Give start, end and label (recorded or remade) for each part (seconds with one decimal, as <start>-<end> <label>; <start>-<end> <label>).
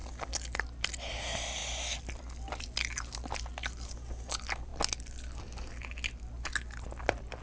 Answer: 0.0-7.4 recorded